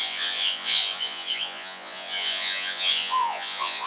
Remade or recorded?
remade